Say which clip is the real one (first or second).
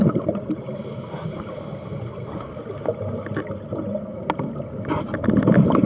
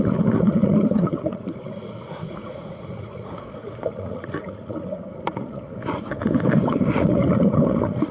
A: first